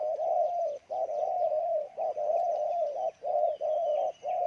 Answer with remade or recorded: recorded